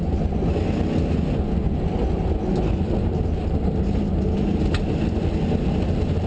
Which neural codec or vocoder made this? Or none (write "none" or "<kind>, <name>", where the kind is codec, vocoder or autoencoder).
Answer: none